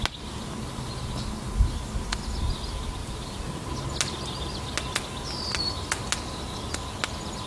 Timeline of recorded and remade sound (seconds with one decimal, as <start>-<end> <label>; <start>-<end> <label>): 0.0-3.0 recorded; 3.0-3.7 remade; 3.7-7.5 recorded